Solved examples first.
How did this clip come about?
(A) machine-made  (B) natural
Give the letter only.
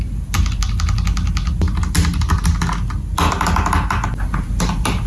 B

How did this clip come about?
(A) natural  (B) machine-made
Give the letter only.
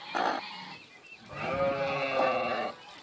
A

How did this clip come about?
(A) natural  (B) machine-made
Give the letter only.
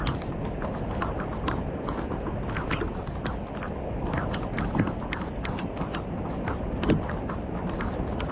A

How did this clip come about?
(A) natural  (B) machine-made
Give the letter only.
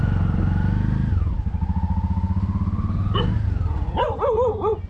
A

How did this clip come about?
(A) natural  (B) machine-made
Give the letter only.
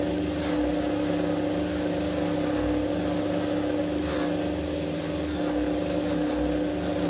A